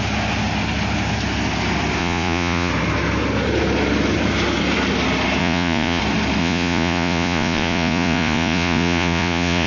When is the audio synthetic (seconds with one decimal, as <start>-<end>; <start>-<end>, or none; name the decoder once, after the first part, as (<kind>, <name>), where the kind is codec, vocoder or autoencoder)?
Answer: 2.0-2.7 (vocoder, Vocos); 5.4-6.0; 6.4-9.7